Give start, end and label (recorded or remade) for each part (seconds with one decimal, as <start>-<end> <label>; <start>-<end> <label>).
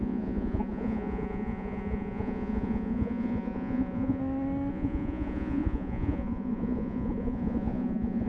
0.0-4.2 remade; 4.2-4.7 recorded; 4.7-8.3 remade